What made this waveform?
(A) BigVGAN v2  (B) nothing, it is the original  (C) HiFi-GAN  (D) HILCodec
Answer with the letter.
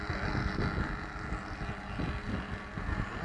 B